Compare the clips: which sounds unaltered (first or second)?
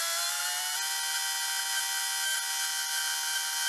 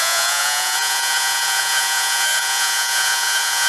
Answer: first